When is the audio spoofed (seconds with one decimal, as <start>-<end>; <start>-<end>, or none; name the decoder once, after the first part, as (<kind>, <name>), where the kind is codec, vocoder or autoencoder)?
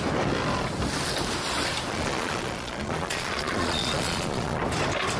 1.9-4.6 (vocoder, Vocos)